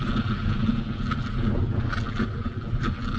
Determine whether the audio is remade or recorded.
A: recorded